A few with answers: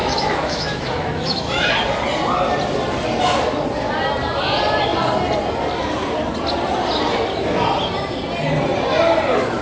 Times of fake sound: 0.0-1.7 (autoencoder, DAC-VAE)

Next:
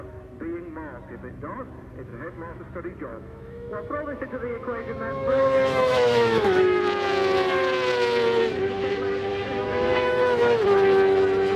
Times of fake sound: 2.1-2.6 (autoencoder, DAC-VAE); 3.1-6.8; 9.3-10.6

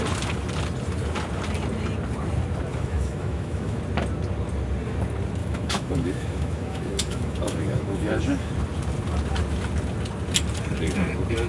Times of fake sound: 2.7-3.8 (autoencoder, DAC-VAE); 5.4-8.5

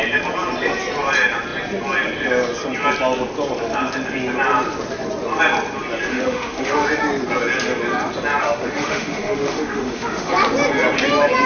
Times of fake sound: 6.1-7.0 (autoencoder, DAC-VAE); 8.4-10.3

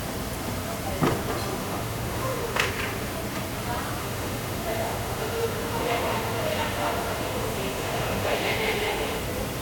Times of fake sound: 1.6-2.7 (autoencoder, DAC-VAE); 4.0-9.2